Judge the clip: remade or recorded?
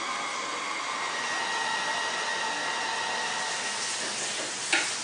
recorded